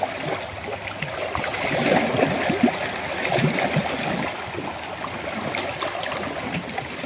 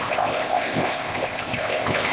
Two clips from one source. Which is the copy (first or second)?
second